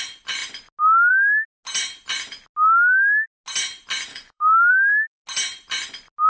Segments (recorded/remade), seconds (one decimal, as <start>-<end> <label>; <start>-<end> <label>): 0.0-4.1 recorded; 4.1-4.7 remade; 4.7-6.3 recorded